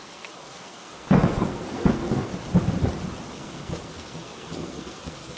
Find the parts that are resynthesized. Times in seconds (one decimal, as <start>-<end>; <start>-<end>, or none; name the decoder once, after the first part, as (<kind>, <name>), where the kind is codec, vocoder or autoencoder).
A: 0.0-2.3 (codec, SNAC); 3.3-5.4